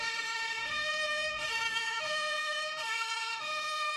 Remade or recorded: remade